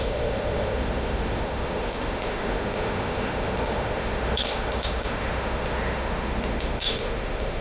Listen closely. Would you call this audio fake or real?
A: fake